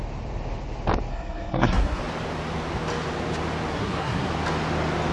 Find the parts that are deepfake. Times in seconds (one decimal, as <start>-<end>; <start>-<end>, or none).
1.1-2.0; 3.7-4.3